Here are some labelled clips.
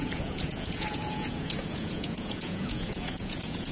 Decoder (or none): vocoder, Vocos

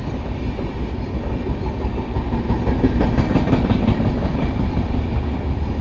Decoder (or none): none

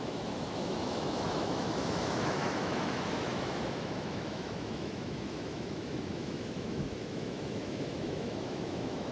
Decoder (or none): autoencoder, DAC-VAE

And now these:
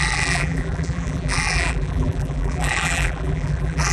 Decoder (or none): vocoder, BigVGAN v2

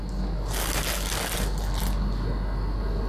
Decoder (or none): none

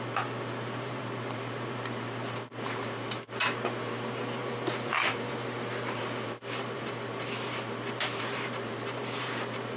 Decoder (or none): vocoder, BigVGAN v2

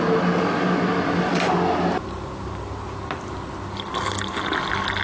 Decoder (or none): none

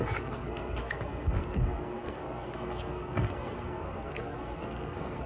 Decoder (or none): codec, SNAC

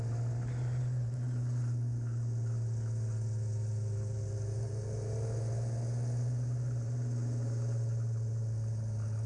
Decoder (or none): none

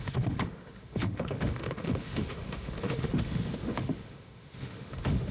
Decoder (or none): autoencoder, DAC-VAE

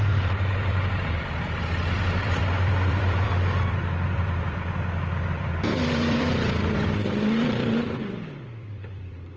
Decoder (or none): vocoder, BigVGAN v2